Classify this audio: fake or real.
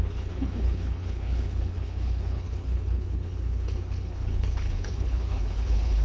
fake